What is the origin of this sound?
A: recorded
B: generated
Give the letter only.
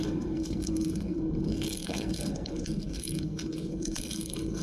B